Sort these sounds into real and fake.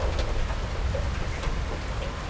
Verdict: real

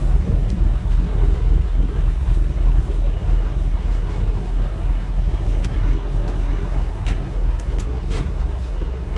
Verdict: fake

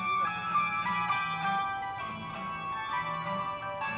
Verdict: real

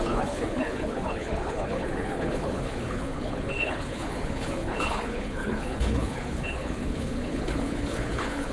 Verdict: fake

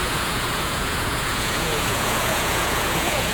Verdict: fake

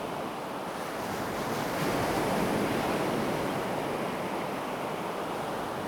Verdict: real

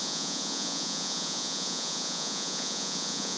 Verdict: fake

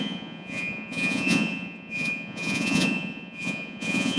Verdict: fake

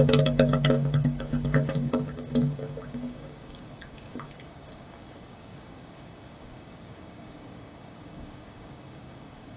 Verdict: fake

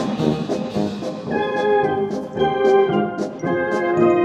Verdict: fake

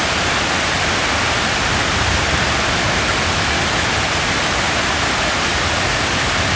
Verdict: real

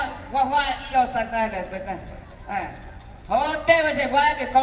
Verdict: fake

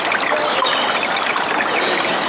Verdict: real